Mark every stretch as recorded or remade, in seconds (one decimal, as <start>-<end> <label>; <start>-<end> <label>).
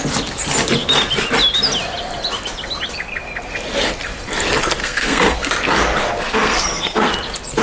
0.0-4.8 recorded; 4.8-5.5 remade; 5.5-6.0 recorded; 6.0-7.1 remade; 7.1-7.6 recorded